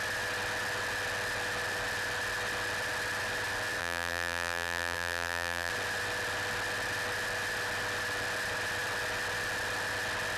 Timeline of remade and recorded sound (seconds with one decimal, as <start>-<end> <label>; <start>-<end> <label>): 0.0-3.8 recorded; 3.8-5.7 remade; 5.7-10.4 recorded